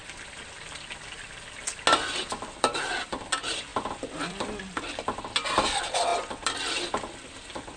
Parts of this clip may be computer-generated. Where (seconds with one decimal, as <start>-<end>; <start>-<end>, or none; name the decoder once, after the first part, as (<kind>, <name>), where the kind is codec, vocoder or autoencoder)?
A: 0.0-1.3 (vocoder, BigVGAN v2); 2.2-3.2; 3.7-5.2

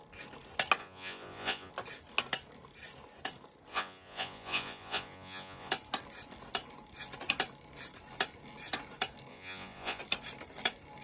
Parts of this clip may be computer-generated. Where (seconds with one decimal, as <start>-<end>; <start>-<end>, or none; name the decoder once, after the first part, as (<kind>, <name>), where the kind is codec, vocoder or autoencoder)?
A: 0.8-1.7 (vocoder, Vocos); 3.7-5.7; 9.3-10.0

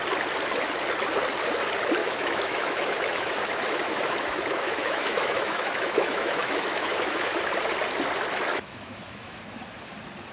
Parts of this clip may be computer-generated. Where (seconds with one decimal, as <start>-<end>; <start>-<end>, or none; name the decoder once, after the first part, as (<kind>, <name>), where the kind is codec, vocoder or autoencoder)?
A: 2.0-7.3 (autoencoder, DAC-VAE); 8.5-9.4

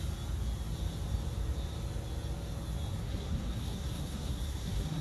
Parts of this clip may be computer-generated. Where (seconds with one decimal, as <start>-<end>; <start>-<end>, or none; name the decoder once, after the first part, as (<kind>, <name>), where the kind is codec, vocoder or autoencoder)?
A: 3.0-5.0 (codec, SNAC)

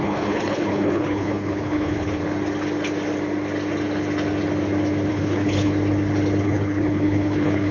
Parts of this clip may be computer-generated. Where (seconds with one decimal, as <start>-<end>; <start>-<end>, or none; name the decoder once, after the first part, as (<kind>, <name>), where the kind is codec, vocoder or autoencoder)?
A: 0.0-2.2 (codec, HILCodec); 5.1-5.7; 6.4-7.7

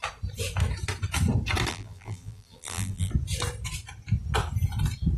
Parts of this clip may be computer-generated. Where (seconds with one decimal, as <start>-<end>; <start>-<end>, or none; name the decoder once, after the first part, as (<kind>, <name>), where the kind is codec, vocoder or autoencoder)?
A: 1.7-3.1 (vocoder, BigVGAN v2)

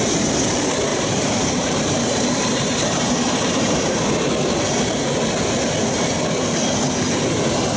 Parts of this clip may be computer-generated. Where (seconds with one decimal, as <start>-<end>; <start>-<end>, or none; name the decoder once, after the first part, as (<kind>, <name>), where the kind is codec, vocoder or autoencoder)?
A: 0.9-4.1 (vocoder, BigVGAN v2)